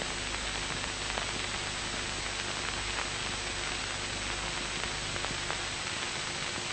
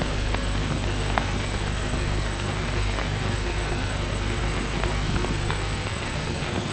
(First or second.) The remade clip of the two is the second